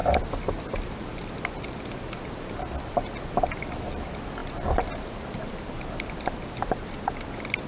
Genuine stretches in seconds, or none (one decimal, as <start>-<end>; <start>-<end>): 0.0-4.4; 6.7-7.7